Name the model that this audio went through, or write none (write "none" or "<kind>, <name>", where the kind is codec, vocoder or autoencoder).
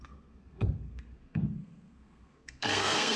codec, SNAC